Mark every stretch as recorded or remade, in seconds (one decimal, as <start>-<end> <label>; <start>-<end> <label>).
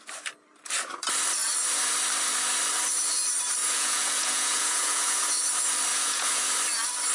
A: 0.0-3.6 recorded; 3.6-5.2 remade; 5.2-5.9 recorded; 5.9-6.5 remade; 6.5-7.1 recorded